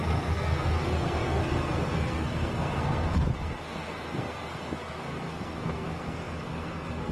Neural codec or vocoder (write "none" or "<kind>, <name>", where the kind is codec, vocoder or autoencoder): codec, SNAC